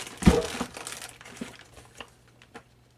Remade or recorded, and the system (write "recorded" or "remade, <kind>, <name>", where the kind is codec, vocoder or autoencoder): recorded